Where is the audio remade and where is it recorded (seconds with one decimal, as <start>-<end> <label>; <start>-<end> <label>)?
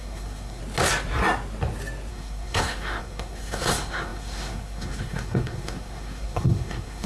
0.0-0.6 remade; 0.6-2.1 recorded; 2.1-7.1 remade